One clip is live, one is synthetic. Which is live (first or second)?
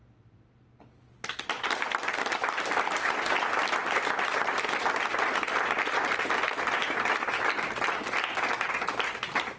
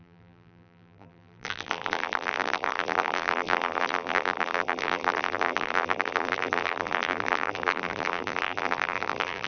first